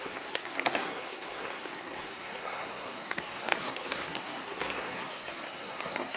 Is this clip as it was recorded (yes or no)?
no